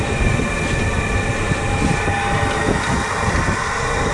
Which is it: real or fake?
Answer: real